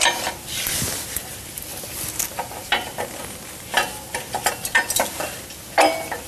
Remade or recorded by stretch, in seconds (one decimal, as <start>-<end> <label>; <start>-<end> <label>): 0.0-1.7 remade; 1.7-5.5 recorded; 5.5-6.3 remade